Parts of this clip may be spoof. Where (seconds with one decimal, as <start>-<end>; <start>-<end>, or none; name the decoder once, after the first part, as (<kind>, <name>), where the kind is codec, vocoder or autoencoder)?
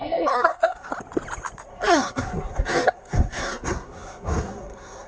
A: 0.0-0.9 (codec, SNAC); 1.7-5.1